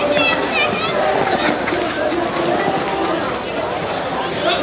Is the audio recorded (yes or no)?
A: yes